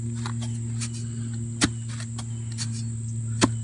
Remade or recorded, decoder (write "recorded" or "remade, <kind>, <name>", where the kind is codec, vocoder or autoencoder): recorded